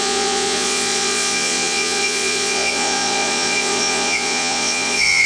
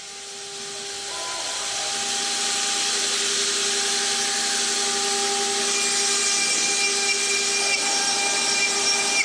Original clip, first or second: second